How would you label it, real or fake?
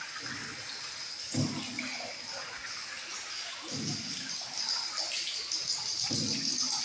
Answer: real